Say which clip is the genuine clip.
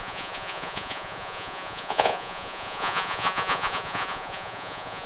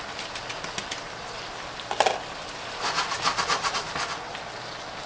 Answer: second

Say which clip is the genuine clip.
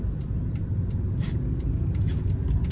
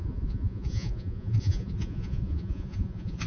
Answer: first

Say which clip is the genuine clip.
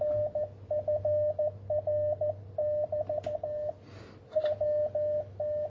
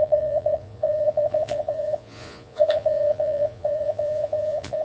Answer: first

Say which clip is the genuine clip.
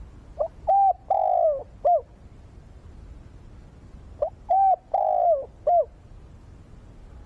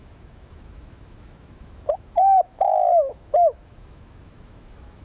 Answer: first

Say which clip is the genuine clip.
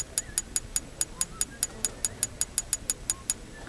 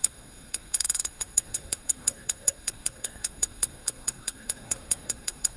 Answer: first